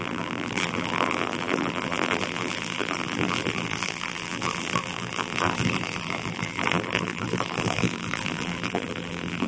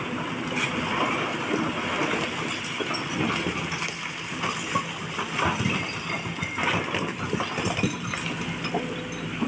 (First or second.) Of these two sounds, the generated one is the first